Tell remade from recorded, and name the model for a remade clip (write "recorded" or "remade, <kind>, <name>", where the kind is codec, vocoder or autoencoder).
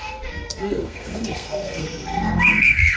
remade, codec, SNAC